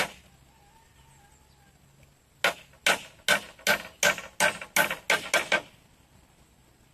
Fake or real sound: real